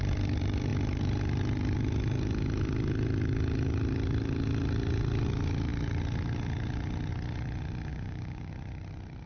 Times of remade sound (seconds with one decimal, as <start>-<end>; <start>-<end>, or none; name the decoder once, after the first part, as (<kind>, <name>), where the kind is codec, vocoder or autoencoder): 7.9-8.5 (codec, DAC)